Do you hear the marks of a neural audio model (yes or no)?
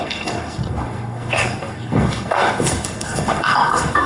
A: yes